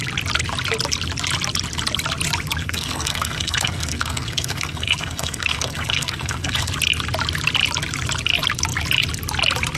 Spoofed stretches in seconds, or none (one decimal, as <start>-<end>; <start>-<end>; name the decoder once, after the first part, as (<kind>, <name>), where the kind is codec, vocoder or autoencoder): 2.6-6.7 (codec, SNAC)